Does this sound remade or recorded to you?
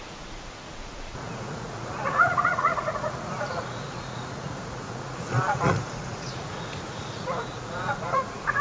remade